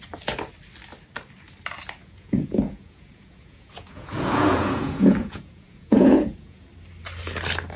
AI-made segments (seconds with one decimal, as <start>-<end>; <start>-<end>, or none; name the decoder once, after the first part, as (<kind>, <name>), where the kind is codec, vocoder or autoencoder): 2.0-6.7 (vocoder, Vocos)